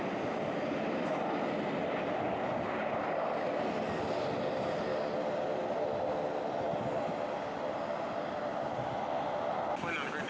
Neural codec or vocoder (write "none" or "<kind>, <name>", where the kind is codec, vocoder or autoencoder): none